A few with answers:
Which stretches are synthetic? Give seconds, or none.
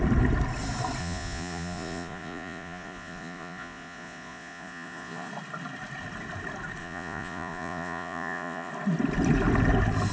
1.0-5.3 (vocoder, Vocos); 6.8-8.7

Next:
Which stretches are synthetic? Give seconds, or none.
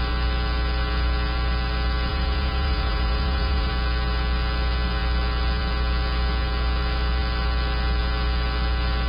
2.1-3.7 (vocoder, Vocos)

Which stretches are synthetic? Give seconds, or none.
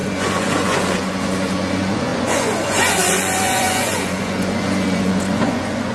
0.0-5.9 (vocoder, Vocos)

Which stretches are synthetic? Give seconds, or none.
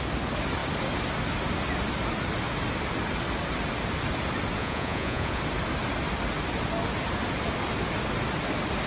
4.6-5.4 (vocoder, Vocos)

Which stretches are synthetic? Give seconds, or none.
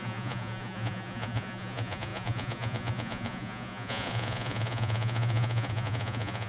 0.0-6.5 (vocoder, Vocos)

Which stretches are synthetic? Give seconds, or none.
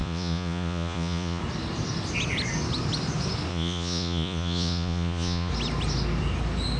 0.0-1.4 (vocoder, Vocos); 3.5-5.5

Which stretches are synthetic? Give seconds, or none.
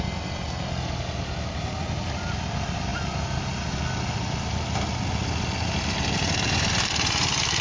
none